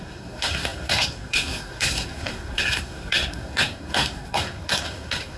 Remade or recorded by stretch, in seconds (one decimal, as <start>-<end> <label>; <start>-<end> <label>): 0.0-5.4 remade